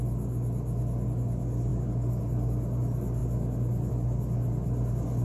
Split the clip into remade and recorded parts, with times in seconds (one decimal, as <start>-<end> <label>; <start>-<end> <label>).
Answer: 0.0-5.2 recorded

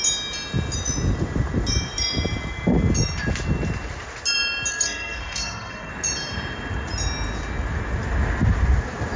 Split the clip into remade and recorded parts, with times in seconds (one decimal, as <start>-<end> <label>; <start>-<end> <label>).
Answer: 0.0-4.7 recorded; 4.7-5.9 remade; 5.9-9.2 recorded

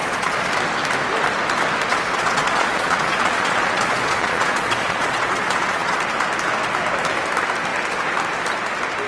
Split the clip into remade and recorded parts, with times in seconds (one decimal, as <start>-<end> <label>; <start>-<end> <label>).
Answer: 0.0-0.5 remade; 0.5-1.9 recorded; 1.9-6.0 remade; 6.0-9.1 recorded

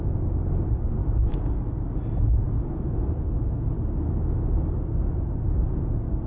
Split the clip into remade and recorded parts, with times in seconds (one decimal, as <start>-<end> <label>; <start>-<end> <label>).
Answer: 0.0-6.3 recorded

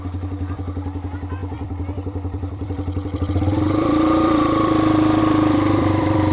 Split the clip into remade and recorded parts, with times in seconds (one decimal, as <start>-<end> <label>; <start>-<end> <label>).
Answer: 0.0-6.3 remade